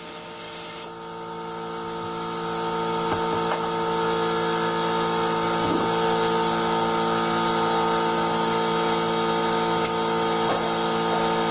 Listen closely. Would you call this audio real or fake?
real